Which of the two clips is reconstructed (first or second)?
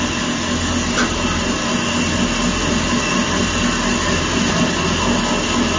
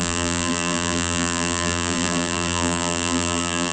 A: second